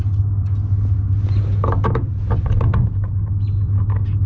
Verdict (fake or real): real